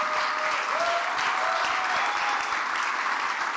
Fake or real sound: real